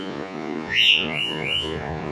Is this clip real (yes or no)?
no